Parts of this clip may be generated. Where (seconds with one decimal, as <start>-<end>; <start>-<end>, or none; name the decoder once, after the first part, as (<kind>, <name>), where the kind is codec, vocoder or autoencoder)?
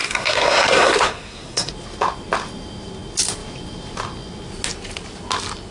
0.0-1.7 (codec, SNAC)